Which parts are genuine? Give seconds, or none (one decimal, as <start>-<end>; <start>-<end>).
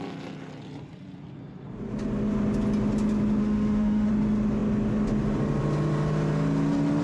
0.0-3.4; 4.1-7.0